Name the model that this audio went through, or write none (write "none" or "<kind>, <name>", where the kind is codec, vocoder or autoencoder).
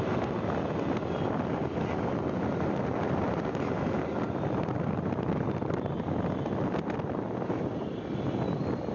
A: none